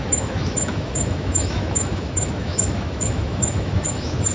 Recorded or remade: remade